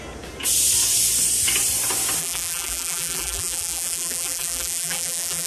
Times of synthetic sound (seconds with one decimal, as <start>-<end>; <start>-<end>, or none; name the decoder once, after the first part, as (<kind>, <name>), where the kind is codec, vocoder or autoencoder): 2.2-5.5 (vocoder, BigVGAN v2)